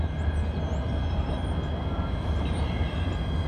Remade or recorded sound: recorded